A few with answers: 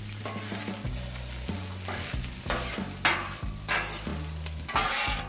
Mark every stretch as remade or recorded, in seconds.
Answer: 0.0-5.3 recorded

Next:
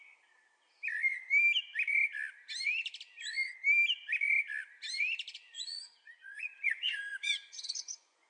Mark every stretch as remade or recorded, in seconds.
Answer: 0.0-5.3 recorded; 5.3-8.3 remade

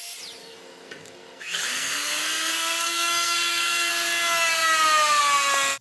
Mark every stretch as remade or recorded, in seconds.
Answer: 0.0-0.4 recorded; 0.4-3.9 remade; 3.9-5.8 recorded

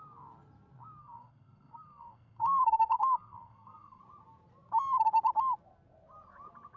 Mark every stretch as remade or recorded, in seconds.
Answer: 0.0-1.0 recorded; 1.0-4.0 remade; 4.0-6.8 recorded

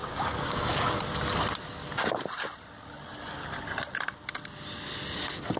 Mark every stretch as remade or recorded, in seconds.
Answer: 0.0-1.0 remade; 1.0-5.6 recorded

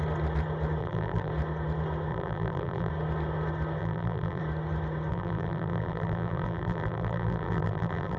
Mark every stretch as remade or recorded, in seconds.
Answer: 0.0-0.8 recorded; 0.8-1.3 remade; 1.3-2.1 recorded; 2.1-2.9 remade; 2.9-3.8 recorded; 3.8-4.4 remade; 4.4-5.1 recorded; 5.1-8.2 remade

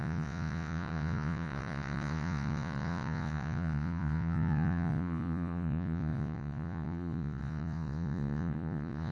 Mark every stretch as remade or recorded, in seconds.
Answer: 0.0-9.1 remade